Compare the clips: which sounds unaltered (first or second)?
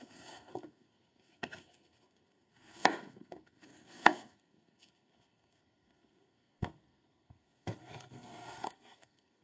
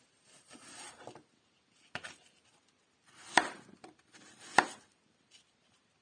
second